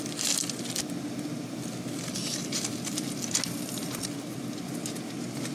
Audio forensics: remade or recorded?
recorded